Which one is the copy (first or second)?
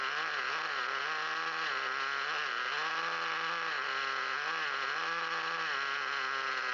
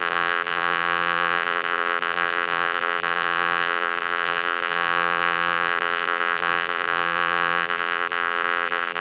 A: second